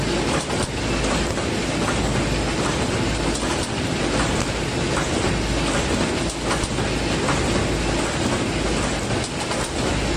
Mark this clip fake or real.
real